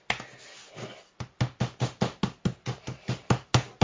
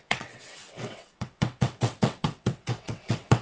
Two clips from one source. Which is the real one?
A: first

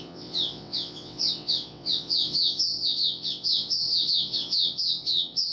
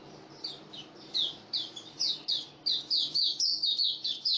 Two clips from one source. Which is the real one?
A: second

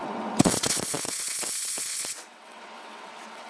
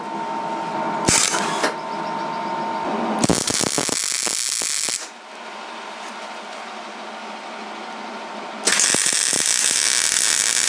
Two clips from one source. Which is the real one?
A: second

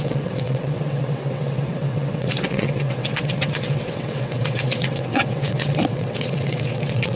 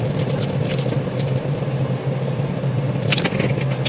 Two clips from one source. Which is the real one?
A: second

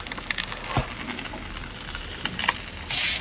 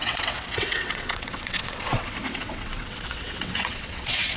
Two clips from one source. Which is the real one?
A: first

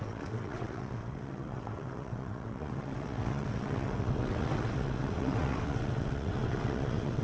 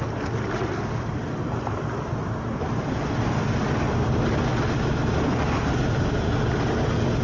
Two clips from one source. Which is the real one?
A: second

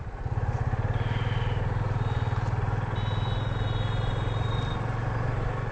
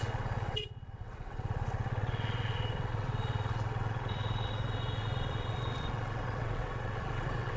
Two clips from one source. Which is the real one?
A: first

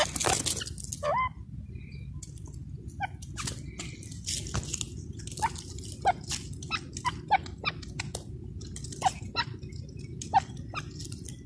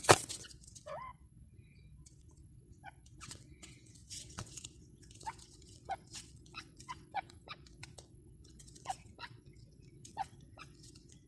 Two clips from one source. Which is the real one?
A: first